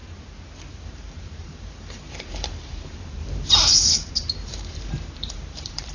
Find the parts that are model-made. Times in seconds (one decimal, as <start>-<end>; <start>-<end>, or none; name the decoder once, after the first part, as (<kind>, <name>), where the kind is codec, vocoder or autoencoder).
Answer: 0.7-5.9 (vocoder, BigVGAN v2)